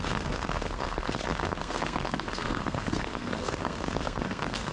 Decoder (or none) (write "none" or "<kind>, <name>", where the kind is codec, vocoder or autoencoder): codec, SNAC